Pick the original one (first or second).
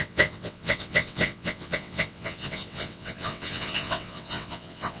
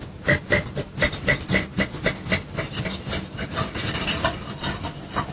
second